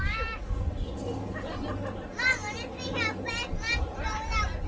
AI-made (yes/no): no